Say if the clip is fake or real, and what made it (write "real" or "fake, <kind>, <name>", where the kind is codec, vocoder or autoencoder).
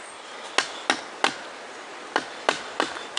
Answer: real